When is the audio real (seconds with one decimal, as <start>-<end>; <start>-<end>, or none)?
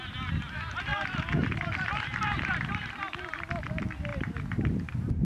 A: 0.0-5.2